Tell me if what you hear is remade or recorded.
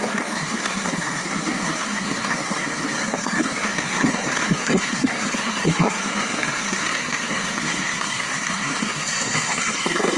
remade